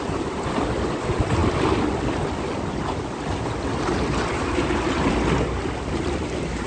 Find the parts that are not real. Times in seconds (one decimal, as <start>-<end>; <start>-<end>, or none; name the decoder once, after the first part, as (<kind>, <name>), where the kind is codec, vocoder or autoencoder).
none

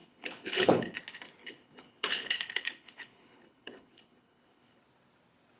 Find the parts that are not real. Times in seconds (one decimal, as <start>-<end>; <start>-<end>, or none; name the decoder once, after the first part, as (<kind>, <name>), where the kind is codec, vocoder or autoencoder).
0.0-1.0 (codec, HILCodec); 1.4-4.8

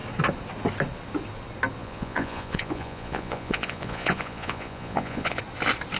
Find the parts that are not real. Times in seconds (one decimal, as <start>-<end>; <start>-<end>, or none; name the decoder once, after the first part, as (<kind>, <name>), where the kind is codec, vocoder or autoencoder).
1.8-5.4 (vocoder, Vocos)

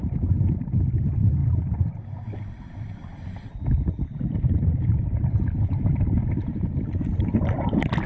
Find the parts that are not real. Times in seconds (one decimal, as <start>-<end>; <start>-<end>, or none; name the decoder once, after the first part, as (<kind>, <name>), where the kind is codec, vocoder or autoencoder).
none

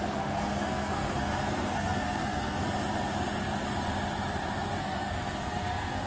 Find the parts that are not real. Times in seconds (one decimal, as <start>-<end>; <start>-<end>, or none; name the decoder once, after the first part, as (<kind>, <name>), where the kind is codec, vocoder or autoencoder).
0.0-2.6 (codec, SNAC); 4.8-6.1

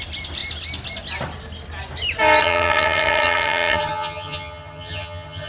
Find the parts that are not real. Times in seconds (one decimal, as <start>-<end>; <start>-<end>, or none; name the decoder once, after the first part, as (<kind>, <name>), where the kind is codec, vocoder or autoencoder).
2.4-5.5 (vocoder, HiFi-GAN)

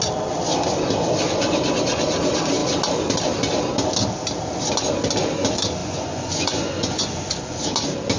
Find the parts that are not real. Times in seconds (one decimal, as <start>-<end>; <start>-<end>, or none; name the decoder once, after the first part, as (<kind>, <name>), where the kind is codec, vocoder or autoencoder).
5.8-7.6 (vocoder, Vocos)